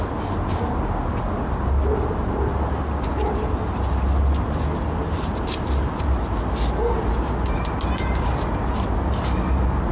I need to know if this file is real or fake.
real